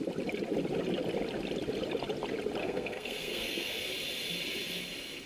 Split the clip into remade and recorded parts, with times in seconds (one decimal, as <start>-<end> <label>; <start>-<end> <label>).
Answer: 0.0-2.6 recorded; 2.6-3.9 remade; 3.9-5.3 recorded